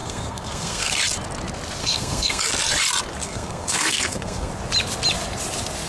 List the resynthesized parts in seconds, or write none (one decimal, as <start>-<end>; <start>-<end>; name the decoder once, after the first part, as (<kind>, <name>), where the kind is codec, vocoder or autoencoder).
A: 0.0-0.9 (codec, SNAC); 1.8-2.4; 3.2-4.5

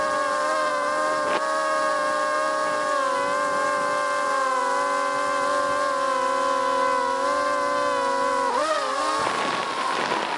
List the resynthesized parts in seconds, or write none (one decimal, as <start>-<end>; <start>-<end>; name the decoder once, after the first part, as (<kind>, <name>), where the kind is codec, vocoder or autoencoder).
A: none

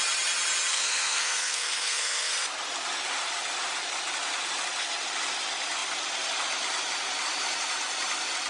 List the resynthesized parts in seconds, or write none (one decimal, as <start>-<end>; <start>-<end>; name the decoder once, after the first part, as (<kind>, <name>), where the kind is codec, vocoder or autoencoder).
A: 0.7-2.3 (codec, SNAC)

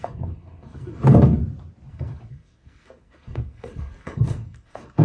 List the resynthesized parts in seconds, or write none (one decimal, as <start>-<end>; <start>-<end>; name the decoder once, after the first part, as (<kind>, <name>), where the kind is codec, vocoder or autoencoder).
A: 0.0-1.4 (codec, SNAC); 1.9-5.0

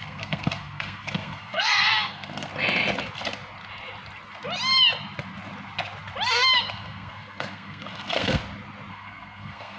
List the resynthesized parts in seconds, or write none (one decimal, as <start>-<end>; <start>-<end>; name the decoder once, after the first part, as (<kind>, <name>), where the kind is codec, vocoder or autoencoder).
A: 0.0-2.5 (codec, SNAC); 6.7-8.4; 8.9-9.8